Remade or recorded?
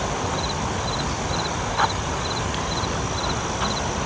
recorded